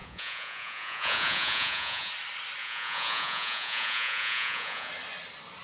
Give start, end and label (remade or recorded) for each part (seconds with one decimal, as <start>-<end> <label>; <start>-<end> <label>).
0.0-2.1 remade; 2.1-2.6 recorded; 2.6-4.9 remade; 4.9-5.6 recorded

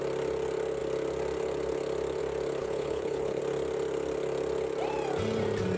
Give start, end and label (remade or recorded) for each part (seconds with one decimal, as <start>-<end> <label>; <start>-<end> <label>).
0.0-2.6 recorded; 2.6-3.4 remade; 3.4-5.8 recorded

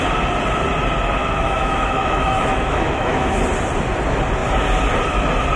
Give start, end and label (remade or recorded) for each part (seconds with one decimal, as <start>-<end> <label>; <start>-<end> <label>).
0.0-1.2 recorded; 1.2-3.4 remade; 3.4-5.6 recorded

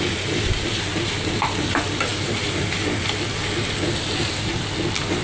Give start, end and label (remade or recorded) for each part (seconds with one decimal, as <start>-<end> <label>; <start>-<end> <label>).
0.0-5.2 recorded